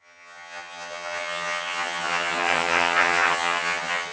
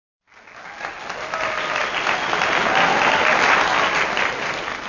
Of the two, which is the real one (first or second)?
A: second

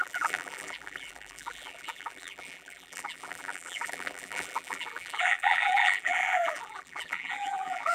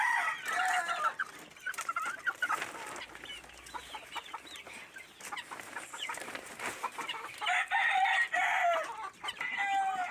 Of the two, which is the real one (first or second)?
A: second